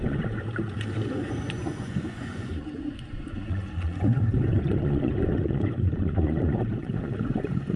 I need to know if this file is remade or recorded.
remade